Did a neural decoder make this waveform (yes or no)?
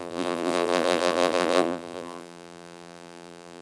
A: yes